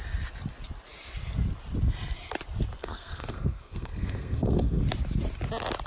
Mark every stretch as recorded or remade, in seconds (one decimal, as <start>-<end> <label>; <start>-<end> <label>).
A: 0.0-2.8 recorded; 2.8-4.8 remade; 4.8-5.9 recorded